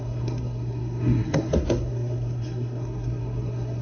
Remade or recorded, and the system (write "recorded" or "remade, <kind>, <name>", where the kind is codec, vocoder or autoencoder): remade, codec, SNAC